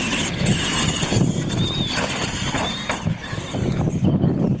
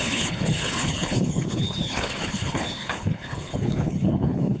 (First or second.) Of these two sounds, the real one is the first